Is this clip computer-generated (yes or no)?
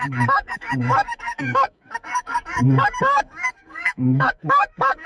yes